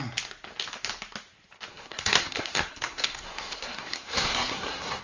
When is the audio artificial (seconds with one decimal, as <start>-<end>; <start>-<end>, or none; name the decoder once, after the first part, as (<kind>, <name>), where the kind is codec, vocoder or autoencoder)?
1.7-5.0 (codec, SNAC)